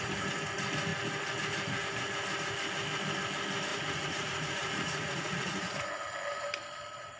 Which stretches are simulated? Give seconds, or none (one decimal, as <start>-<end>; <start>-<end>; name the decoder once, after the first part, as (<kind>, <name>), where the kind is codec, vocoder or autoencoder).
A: 3.7-5.9 (vocoder, Vocos)